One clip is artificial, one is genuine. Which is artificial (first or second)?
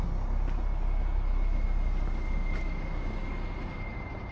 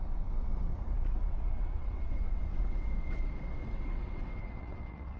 second